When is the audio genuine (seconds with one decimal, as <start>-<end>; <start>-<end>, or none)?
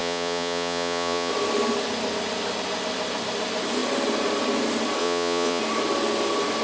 1.3-5.0; 5.6-6.6